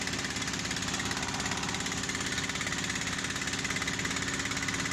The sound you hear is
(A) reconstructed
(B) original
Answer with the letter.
B